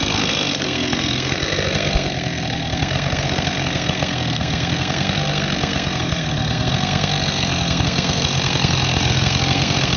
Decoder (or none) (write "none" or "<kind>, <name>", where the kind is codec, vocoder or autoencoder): codec, SNAC